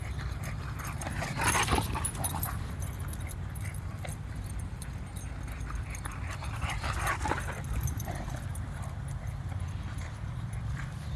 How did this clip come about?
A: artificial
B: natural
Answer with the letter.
A